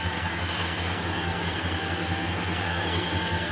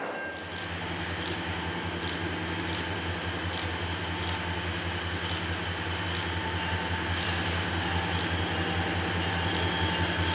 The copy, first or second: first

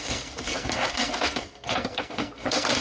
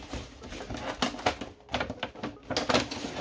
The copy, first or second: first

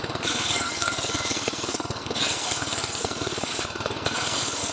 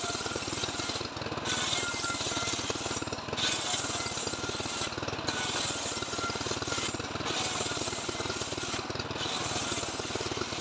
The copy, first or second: first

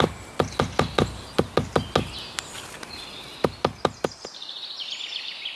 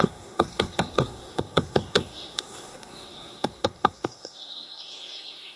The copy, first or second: second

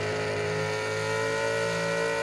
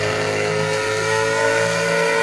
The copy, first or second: second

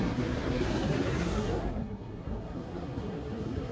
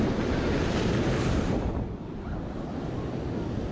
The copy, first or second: first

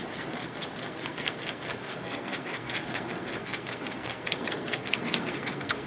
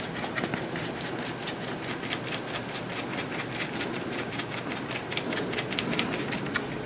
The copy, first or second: first